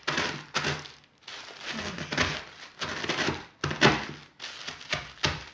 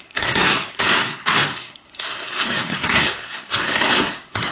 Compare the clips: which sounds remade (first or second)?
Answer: second